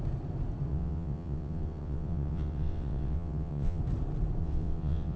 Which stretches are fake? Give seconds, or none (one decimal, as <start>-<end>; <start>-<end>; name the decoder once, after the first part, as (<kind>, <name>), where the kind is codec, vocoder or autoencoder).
0.7-3.8 (vocoder, WaveNeXt); 4.4-5.2